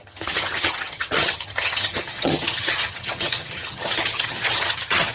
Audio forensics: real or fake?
fake